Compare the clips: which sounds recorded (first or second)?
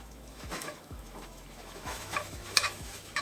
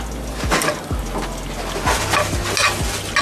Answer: second